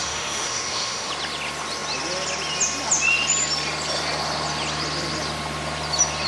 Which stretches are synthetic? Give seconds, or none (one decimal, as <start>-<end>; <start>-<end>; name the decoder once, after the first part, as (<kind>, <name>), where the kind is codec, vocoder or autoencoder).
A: 0.0-1.1 (autoencoder, DAC-VAE)